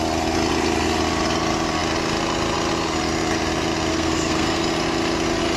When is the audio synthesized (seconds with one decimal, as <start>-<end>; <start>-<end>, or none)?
3.9-4.6